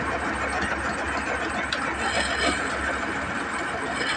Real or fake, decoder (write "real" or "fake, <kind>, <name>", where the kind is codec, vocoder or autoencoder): real